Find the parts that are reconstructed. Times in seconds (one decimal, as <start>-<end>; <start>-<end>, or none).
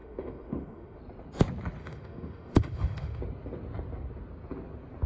0.0-1.0; 1.8-3.2